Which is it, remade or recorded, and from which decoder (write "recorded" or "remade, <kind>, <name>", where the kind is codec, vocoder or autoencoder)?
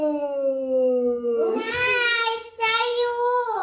remade, codec, DAC